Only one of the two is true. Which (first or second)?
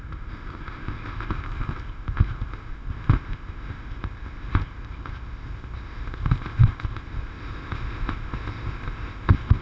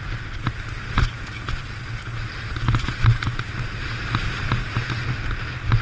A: second